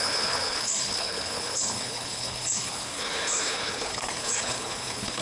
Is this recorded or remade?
remade